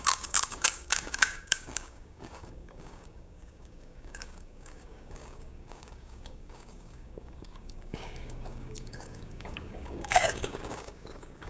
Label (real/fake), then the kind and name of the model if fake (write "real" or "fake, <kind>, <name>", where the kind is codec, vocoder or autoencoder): fake, codec, DAC